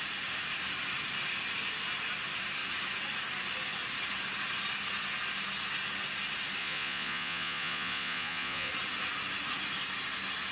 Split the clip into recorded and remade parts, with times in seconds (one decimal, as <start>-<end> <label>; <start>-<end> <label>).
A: 0.0-6.6 recorded; 6.6-8.7 remade; 8.7-10.5 recorded